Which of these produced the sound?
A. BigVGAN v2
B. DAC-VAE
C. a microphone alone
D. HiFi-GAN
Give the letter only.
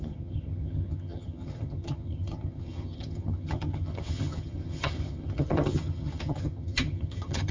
D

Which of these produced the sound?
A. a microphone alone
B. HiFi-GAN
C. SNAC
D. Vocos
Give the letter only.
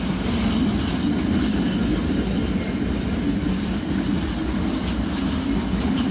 A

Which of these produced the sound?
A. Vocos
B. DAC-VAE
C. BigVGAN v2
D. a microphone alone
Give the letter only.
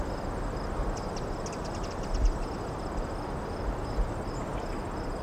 D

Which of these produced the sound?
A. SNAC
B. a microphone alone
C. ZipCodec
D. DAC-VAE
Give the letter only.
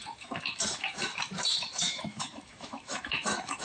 D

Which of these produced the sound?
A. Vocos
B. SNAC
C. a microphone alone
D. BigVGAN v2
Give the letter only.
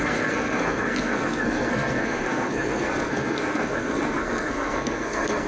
B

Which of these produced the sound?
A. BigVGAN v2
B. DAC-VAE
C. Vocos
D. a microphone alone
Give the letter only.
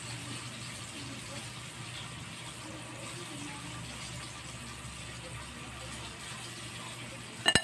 D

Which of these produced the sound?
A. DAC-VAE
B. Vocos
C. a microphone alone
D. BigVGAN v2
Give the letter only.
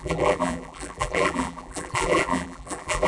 D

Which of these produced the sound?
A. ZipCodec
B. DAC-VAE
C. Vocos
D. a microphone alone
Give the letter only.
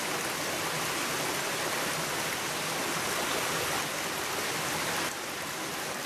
D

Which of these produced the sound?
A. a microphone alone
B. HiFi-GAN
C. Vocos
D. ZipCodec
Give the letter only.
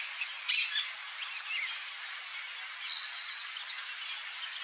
A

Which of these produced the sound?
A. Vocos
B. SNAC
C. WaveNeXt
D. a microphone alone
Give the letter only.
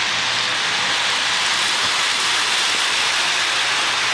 D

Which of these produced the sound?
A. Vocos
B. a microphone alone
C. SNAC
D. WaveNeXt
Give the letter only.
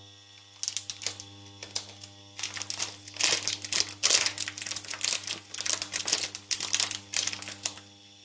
B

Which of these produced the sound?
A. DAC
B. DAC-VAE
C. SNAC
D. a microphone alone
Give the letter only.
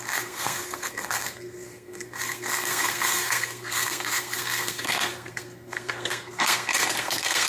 C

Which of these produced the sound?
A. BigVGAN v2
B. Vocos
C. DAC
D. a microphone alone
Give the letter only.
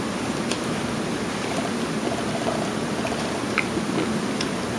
D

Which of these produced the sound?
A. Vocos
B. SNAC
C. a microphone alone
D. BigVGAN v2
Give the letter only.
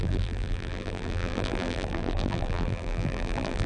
D